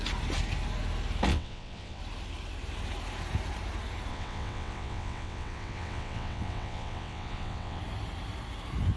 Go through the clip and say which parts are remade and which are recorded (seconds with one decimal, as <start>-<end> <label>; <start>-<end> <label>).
0.0-1.3 recorded; 1.3-2.0 remade; 2.0-4.1 recorded; 4.1-7.8 remade; 7.8-9.0 recorded